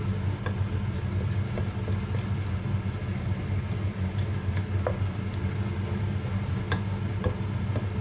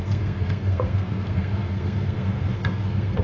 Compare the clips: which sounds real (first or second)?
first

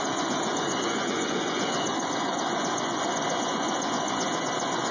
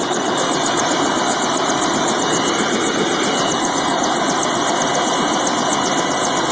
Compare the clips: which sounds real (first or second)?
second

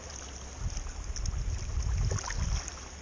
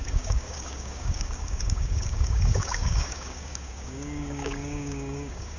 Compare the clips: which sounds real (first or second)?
first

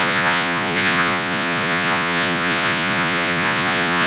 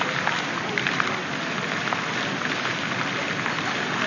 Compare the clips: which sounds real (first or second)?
second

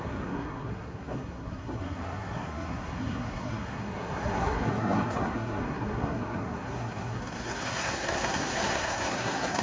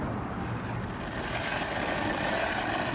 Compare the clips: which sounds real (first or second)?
second